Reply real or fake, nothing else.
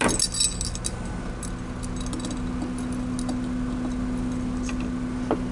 real